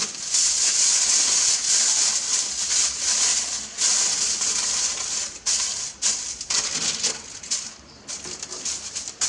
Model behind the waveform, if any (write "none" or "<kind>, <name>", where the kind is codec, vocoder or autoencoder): none